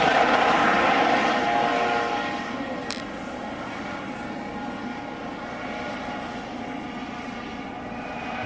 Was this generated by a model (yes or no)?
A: no